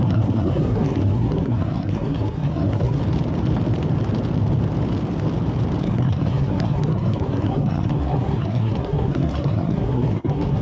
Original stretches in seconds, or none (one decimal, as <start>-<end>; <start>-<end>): 3.0-5.8